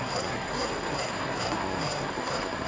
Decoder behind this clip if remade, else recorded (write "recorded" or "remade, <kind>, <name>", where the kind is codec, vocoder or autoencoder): remade, codec, SNAC